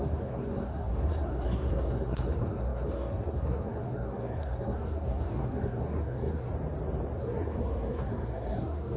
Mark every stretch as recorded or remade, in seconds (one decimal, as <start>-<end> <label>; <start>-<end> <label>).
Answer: 0.0-6.5 remade; 6.5-7.2 recorded; 7.2-9.0 remade